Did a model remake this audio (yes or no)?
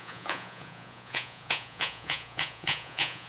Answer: yes